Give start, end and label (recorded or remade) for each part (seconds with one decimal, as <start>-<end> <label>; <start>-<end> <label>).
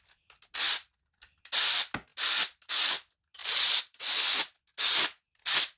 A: 0.0-3.4 recorded; 3.4-4.0 remade; 4.0-5.8 recorded